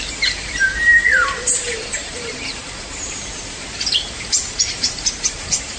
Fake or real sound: fake